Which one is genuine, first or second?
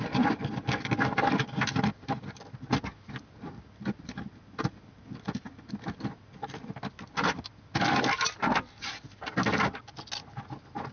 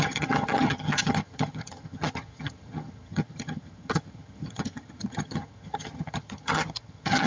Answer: first